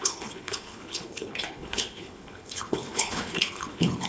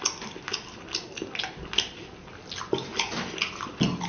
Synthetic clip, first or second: first